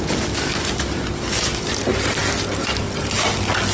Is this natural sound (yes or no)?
no